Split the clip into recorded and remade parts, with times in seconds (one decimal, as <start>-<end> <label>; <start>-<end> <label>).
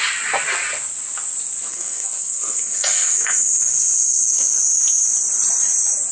0.0-1.7 recorded; 1.7-4.6 remade; 4.6-6.1 recorded